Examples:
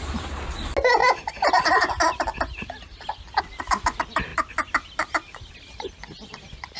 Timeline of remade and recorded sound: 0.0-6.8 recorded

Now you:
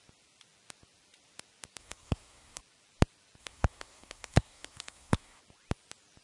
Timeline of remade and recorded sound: 0.0-1.8 recorded; 1.8-2.6 remade; 2.6-3.4 recorded; 3.4-5.4 remade; 5.4-6.2 recorded

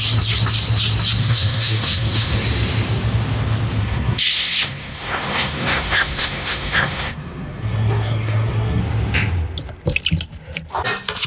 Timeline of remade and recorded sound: 0.0-1.2 recorded; 1.2-2.4 remade; 2.4-3.8 recorded; 3.8-8.8 remade; 8.8-11.3 recorded

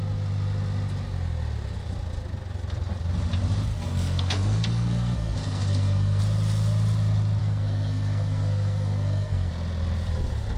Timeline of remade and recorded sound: 0.0-3.7 recorded; 3.7-6.2 remade; 6.2-7.4 recorded; 7.4-9.5 remade; 9.5-10.6 recorded

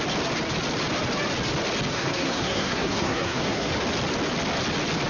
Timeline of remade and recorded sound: 0.0-1.9 recorded; 1.9-3.7 remade; 3.7-5.1 recorded

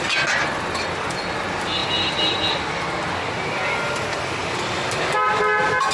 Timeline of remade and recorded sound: 0.0-5.9 recorded

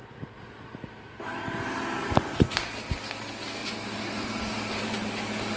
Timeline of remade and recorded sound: 0.0-5.6 recorded

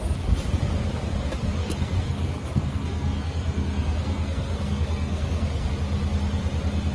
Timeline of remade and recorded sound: 0.0-1.6 recorded; 1.6-5.7 remade; 5.7-6.9 recorded